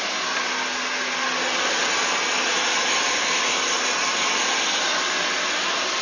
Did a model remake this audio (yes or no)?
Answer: no